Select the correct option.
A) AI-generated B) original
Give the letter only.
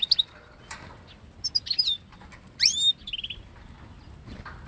B